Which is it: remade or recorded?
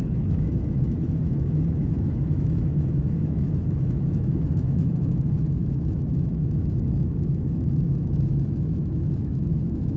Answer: remade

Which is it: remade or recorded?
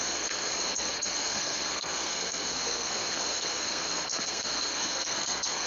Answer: remade